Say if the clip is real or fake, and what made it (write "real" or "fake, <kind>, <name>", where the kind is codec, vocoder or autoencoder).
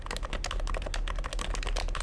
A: real